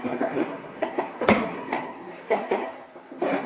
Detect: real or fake fake